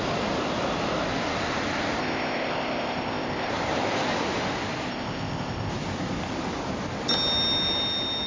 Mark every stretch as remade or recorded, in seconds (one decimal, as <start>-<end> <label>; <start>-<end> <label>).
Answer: 0.0-2.0 recorded; 2.0-3.5 remade; 3.5-4.9 recorded; 4.9-5.7 remade; 5.7-8.3 recorded